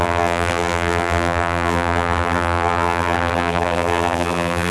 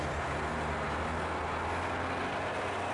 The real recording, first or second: second